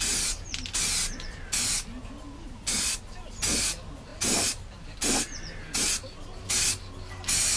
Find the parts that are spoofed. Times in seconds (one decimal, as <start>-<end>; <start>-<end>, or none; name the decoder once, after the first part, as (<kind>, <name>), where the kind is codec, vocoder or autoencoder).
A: none